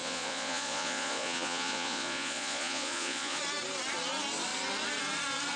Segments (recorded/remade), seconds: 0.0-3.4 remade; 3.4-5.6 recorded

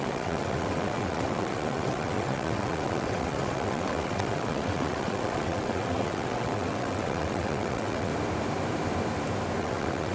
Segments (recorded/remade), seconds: 0.0-8.1 remade; 8.1-9.6 recorded; 9.6-10.1 remade

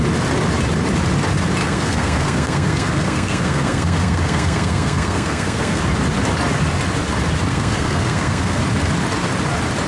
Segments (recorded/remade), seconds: 0.0-1.6 recorded; 1.6-5.8 remade; 5.8-7.5 recorded; 7.5-8.6 remade; 8.6-9.9 recorded

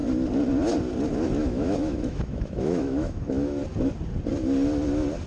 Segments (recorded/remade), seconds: 0.0-1.4 recorded; 1.4-3.6 remade; 3.6-5.3 recorded

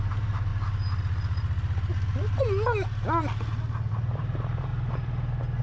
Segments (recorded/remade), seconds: 0.0-0.5 remade; 0.5-3.9 recorded; 3.9-4.7 remade; 4.7-5.6 recorded